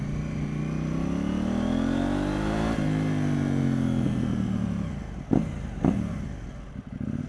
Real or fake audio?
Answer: real